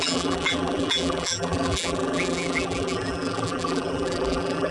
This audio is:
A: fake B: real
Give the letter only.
A